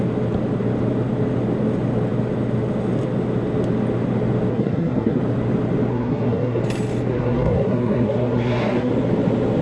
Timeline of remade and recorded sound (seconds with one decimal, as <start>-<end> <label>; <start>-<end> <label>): 0.0-4.5 recorded; 4.5-5.2 remade; 5.2-5.9 recorded; 5.9-6.6 remade; 6.6-7.1 recorded; 7.1-8.9 remade; 8.9-9.6 recorded